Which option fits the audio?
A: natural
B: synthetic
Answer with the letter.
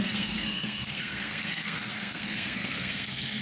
B